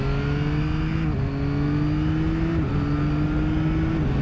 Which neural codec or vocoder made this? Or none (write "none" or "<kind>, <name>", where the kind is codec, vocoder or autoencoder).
none